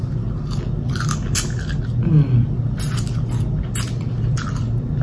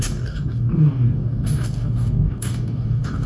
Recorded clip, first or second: first